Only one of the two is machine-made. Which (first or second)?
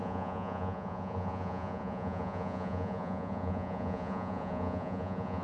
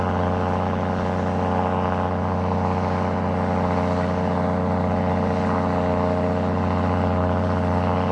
first